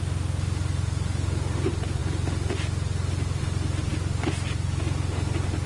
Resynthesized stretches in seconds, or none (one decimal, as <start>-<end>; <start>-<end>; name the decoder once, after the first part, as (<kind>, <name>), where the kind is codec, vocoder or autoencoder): none